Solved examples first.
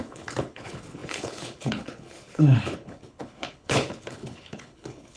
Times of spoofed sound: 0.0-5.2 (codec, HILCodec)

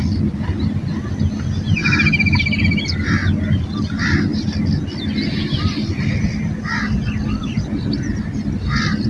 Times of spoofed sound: none

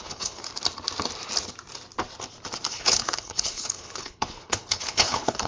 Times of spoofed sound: 0.0-0.4 (codec, HILCodec); 2.7-5.5

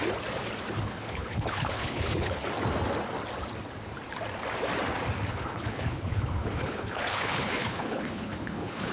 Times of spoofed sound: 0.8-2.4 (codec, HILCodec); 5.3-8.9